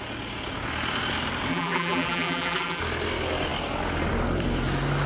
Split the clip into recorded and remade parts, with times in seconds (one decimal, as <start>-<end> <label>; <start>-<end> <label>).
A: 0.0-1.5 recorded; 1.5-2.8 remade; 2.8-5.1 recorded